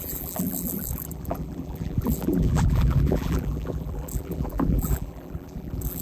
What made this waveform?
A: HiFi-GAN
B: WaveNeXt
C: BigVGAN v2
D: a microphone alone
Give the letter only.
C